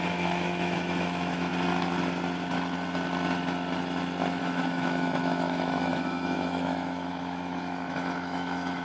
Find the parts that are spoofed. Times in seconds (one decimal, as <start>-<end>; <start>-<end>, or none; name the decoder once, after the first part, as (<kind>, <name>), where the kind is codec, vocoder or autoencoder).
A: 0.0-1.5 (autoencoder, DAC-VAE); 4.4-8.8